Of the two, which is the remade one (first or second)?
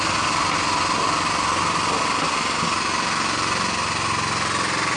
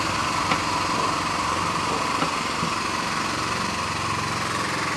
second